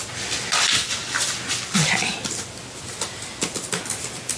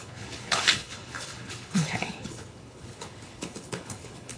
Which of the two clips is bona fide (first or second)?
first